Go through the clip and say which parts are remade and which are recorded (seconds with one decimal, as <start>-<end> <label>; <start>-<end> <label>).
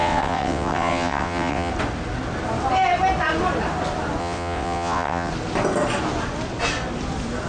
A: 0.0-1.7 remade; 1.7-4.2 recorded; 4.2-5.3 remade; 5.3-7.5 recorded